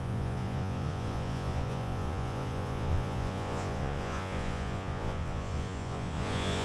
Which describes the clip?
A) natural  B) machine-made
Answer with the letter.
B